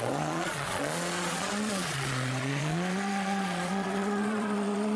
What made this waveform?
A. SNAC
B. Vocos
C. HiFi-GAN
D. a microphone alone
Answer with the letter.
B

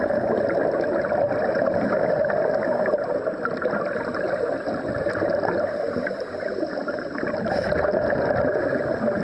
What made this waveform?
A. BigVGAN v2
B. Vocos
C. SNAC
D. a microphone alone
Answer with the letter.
D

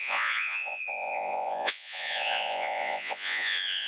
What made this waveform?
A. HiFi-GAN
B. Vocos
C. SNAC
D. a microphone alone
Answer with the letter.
B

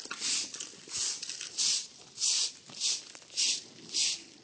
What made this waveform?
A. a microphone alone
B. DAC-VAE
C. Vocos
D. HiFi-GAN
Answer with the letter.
A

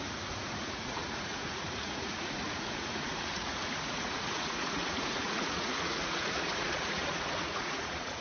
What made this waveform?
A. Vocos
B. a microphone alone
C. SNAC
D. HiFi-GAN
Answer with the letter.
A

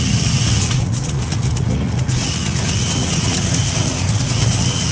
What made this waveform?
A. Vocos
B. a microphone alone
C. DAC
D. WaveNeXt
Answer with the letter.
A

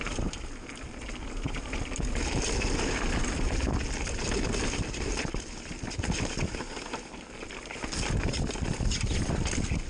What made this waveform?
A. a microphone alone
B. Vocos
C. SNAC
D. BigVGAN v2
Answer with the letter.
A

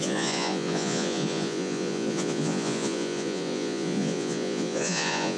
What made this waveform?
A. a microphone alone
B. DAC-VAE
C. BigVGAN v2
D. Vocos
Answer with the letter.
D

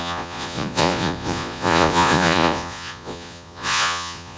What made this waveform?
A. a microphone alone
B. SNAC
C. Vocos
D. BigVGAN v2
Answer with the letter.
C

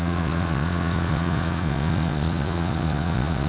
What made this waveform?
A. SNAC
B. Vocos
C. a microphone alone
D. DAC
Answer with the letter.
B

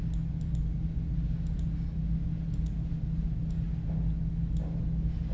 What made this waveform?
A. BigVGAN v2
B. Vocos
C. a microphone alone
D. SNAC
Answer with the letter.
C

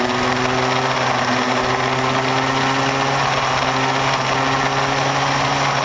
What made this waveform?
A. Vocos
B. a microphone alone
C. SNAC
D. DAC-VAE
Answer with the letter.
B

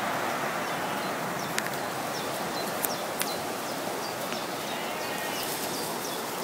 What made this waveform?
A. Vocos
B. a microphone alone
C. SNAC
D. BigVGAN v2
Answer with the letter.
B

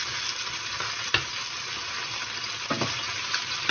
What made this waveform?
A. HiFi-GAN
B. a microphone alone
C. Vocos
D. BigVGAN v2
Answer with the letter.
B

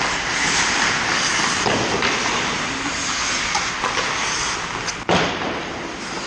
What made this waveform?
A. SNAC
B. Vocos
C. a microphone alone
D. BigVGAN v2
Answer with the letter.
C